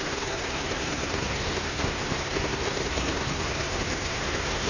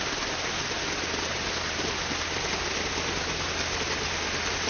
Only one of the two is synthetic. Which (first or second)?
first